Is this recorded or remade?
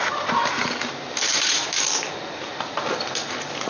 remade